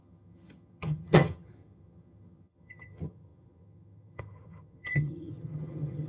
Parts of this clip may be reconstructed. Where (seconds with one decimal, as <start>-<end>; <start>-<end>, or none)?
0.0-6.1